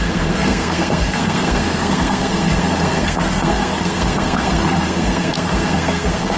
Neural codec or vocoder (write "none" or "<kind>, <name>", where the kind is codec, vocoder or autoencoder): codec, SNAC